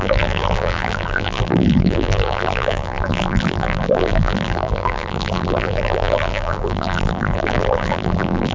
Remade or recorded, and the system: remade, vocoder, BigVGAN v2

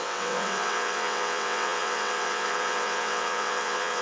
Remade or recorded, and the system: remade, vocoder, WaveNeXt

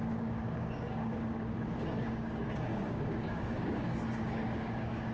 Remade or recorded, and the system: remade, codec, DAC